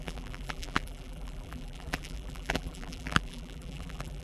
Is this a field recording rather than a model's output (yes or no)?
no